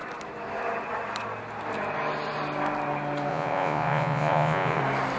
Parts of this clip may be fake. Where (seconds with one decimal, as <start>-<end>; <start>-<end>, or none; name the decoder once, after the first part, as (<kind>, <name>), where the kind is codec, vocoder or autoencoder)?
3.3-4.8 (vocoder, Vocos)